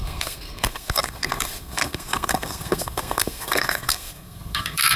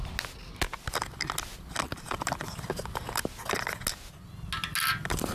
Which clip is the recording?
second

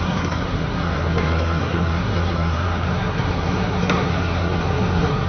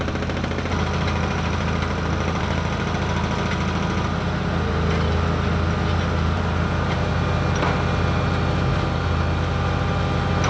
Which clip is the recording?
second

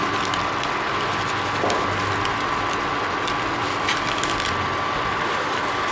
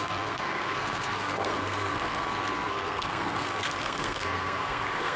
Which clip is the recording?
first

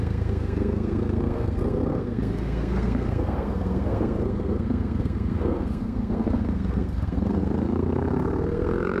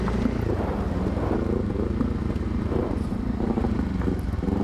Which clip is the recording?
second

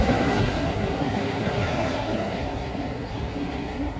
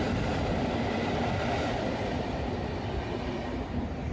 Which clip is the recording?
second